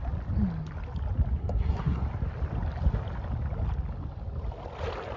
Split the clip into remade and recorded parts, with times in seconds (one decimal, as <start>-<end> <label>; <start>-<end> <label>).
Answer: 0.0-1.4 recorded; 1.4-2.0 remade; 2.0-5.2 recorded